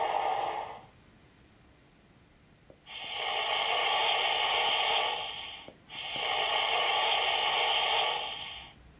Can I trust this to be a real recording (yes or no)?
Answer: yes